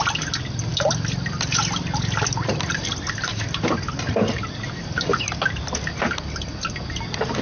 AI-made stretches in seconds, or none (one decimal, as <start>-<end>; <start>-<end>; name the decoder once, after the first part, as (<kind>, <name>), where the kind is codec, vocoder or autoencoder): none